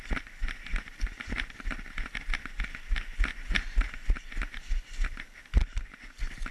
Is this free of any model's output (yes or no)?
yes